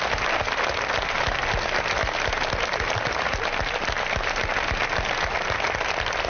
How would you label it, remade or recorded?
recorded